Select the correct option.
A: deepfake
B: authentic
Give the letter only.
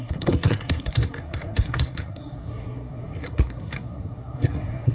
A